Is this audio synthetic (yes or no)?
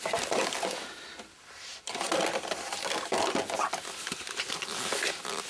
no